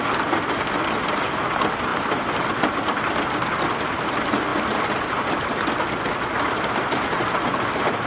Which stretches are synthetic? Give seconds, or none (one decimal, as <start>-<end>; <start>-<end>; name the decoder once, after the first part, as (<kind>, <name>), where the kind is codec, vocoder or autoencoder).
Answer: 1.9-2.6 (vocoder, BigVGAN v2); 4.5-8.1